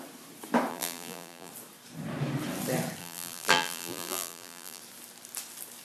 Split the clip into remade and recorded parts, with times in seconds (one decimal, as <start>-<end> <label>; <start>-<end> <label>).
0.0-0.7 recorded; 0.7-1.5 remade; 1.5-3.0 recorded; 3.0-4.8 remade; 4.8-5.8 recorded

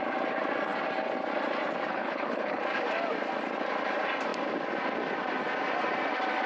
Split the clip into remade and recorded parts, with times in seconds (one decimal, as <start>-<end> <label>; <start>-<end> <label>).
0.0-1.9 recorded; 1.9-2.6 remade; 2.6-6.5 recorded

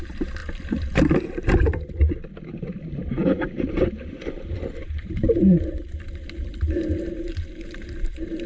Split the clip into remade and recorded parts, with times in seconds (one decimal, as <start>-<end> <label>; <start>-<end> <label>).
0.0-0.4 remade; 0.4-1.1 recorded; 1.1-8.5 remade

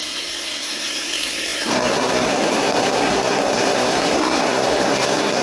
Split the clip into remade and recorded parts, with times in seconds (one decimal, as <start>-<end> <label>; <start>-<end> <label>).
0.0-5.4 remade

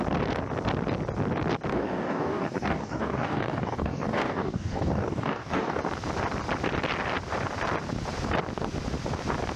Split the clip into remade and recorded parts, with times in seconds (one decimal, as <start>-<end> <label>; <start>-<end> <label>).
0.0-1.7 recorded; 1.7-5.8 remade; 5.8-9.6 recorded

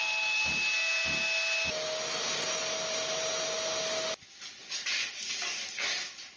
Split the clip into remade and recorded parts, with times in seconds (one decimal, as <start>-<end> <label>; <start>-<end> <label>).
0.0-6.4 recorded